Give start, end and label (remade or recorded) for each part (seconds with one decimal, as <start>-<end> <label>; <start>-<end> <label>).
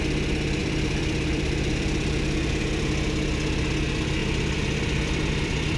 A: 0.0-0.6 recorded; 0.6-2.6 remade; 2.6-4.2 recorded; 4.2-5.8 remade